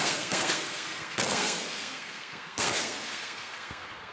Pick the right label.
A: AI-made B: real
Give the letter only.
A